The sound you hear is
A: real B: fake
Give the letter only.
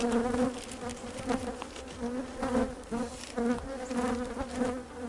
A